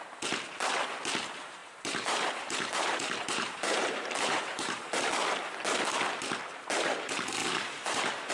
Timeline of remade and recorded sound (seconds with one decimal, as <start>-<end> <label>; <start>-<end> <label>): 0.0-1.6 recorded; 1.6-5.0 remade; 5.0-7.4 recorded; 7.4-8.3 remade